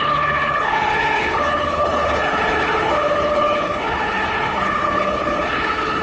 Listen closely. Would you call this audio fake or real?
fake